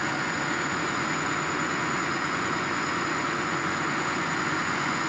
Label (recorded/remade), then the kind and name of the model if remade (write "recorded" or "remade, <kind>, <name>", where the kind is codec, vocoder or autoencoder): remade, vocoder, Vocos